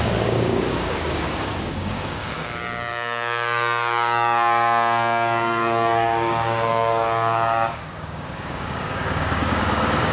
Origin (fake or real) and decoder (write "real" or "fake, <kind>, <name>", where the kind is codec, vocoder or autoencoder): fake, codec, DAC